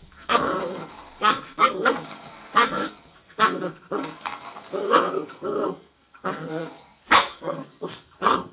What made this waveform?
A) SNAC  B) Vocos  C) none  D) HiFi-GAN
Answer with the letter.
A